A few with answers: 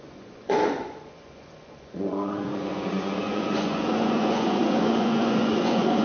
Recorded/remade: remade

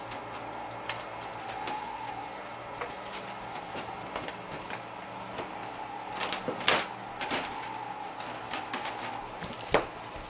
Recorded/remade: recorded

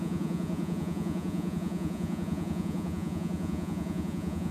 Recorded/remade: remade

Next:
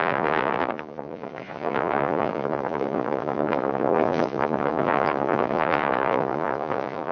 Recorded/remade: remade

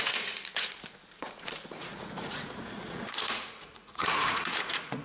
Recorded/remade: remade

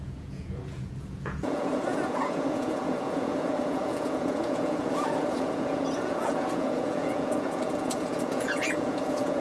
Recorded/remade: remade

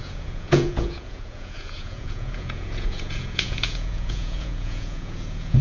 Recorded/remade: remade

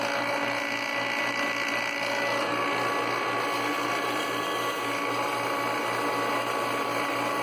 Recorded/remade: recorded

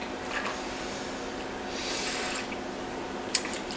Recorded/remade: recorded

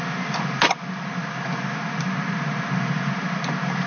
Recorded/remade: recorded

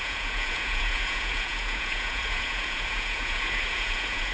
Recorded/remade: remade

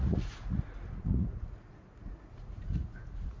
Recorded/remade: remade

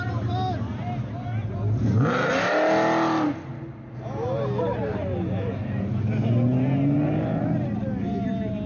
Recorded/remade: recorded